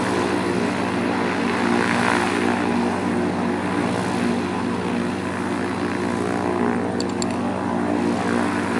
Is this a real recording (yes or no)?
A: yes